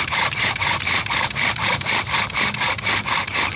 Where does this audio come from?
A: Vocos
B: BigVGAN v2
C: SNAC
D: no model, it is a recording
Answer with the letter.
D